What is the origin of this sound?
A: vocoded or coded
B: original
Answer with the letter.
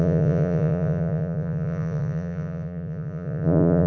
A